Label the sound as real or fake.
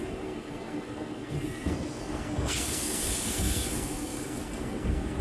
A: fake